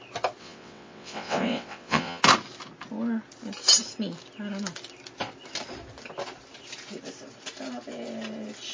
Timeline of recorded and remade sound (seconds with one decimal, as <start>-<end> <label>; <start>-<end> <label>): 0.0-0.4 recorded; 0.4-2.2 remade; 2.2-8.7 recorded